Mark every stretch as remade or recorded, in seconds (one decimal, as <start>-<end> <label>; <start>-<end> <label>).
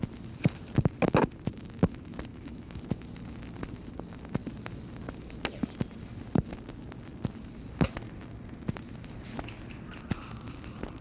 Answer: 0.0-2.3 recorded; 2.3-2.8 remade; 2.8-11.0 recorded